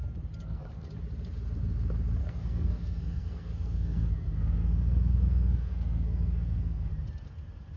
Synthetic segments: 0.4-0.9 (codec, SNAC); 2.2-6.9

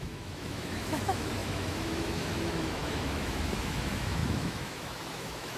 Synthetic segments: 0.0-5.6 (autoencoder, DAC-VAE)